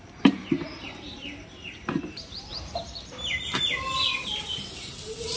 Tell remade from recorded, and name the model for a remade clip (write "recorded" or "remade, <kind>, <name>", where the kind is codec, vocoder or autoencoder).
remade, vocoder, BigVGAN v2